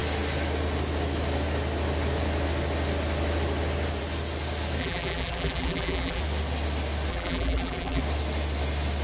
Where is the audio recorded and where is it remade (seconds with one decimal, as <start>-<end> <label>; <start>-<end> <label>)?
0.0-4.8 recorded; 4.8-6.2 remade; 6.2-7.1 recorded; 7.1-8.0 remade; 8.0-9.0 recorded